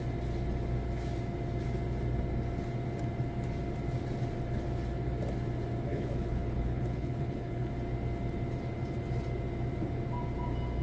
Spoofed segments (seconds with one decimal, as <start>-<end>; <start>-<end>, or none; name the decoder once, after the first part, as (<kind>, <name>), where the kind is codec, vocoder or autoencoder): 5.9-7.7 (codec, HILCodec)